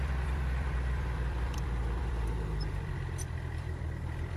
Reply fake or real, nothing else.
fake